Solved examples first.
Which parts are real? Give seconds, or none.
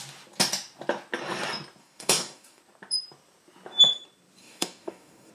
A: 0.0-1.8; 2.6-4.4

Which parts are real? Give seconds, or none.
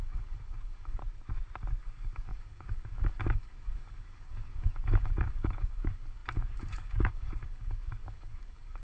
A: 1.0-1.8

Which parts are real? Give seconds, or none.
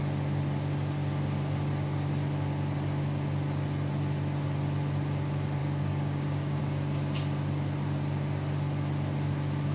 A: 0.0-5.6; 6.6-9.7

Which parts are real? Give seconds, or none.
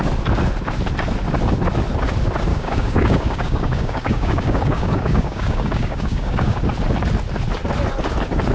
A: 0.0-2.5; 6.6-8.5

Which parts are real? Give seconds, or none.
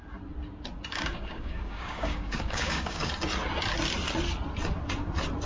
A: 0.0-0.9; 3.1-5.5